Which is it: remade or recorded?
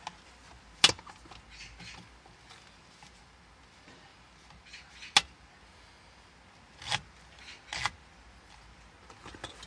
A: recorded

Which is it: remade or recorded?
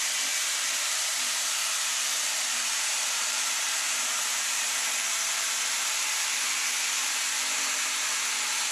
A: remade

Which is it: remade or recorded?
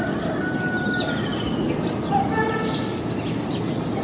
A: recorded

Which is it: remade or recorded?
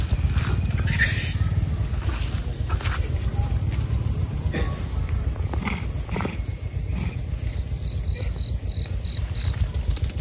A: recorded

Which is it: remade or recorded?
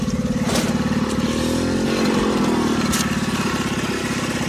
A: recorded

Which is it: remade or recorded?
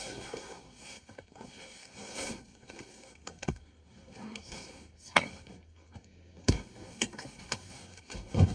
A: remade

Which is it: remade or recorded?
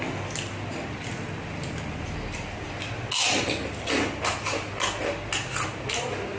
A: recorded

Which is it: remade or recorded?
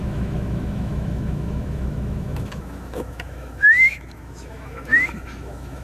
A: remade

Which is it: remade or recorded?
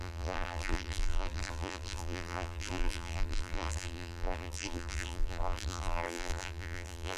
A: remade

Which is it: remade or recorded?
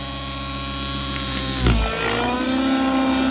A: recorded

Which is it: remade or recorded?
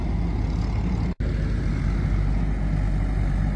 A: recorded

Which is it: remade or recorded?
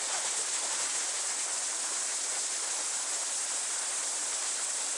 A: recorded